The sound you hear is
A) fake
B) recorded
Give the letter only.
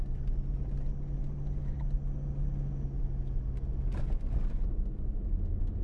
B